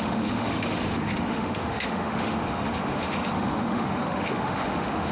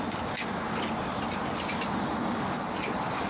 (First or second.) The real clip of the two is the second